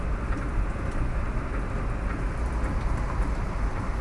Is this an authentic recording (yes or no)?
yes